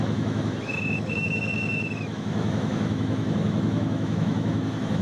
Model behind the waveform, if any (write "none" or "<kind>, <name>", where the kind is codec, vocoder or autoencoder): autoencoder, DAC-VAE